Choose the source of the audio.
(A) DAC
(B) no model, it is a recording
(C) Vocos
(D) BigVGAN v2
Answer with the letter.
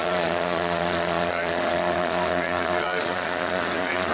C